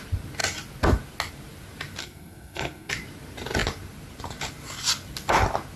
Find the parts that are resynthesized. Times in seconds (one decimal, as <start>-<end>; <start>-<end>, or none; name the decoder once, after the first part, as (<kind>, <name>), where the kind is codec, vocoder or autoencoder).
2.0-2.9 (codec, SNAC)